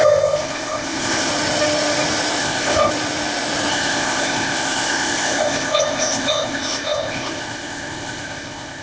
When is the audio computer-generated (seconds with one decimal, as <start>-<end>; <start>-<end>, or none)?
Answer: 0.0-1.3; 2.4-2.9; 3.7-8.8